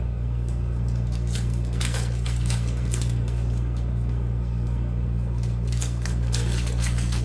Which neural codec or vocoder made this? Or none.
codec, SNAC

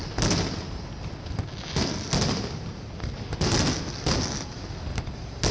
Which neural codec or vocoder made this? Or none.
none